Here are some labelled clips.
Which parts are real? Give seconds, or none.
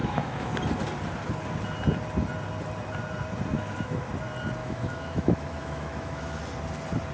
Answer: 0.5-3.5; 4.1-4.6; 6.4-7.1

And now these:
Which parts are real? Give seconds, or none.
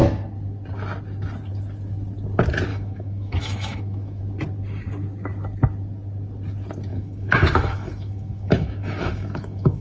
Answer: 0.0-2.7; 4.2-6.9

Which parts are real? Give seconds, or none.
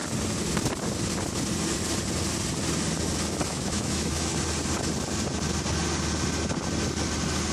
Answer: 0.0-3.5; 4.3-7.5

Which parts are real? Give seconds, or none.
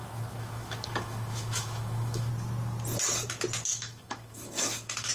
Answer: 2.3-3.7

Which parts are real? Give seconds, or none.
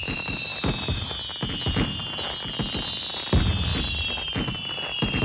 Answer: 0.0-5.2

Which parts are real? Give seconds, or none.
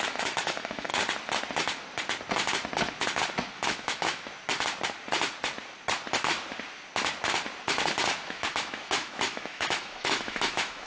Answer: 0.9-3.5; 4.3-8.2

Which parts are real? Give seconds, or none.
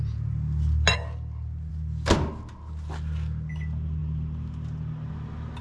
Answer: 0.0-5.6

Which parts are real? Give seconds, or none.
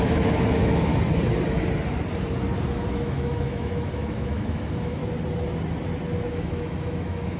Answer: 0.9-2.9; 5.0-6.3